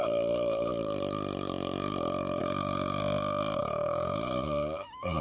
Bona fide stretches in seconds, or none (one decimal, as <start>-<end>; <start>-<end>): 0.7-2.4; 3.0-3.6